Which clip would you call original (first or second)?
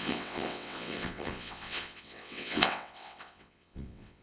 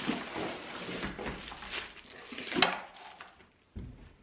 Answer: second